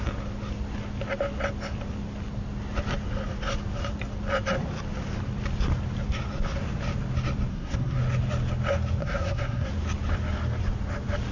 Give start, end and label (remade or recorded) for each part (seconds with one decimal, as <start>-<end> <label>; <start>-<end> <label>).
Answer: 0.0-7.5 recorded; 7.5-8.0 remade; 8.0-9.0 recorded; 9.0-9.7 remade; 9.7-11.3 recorded